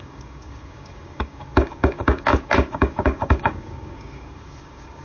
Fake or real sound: fake